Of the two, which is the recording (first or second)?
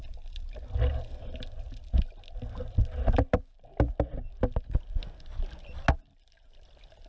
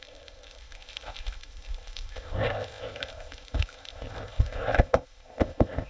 first